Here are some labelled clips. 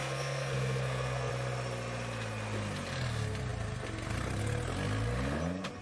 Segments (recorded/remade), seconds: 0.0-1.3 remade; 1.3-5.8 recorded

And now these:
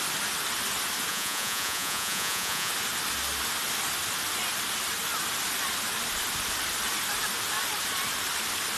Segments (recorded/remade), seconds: 0.0-1.1 recorded; 1.1-2.7 remade; 2.7-8.8 recorded

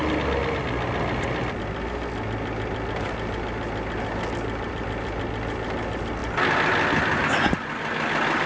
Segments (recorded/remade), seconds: 0.0-8.5 recorded

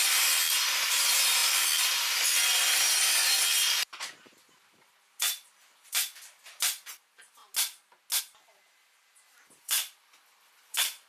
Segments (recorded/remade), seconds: 0.0-7.4 remade; 7.4-8.2 recorded; 8.2-11.1 remade